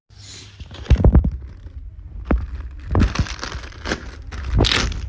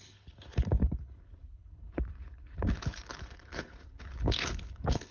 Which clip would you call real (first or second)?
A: first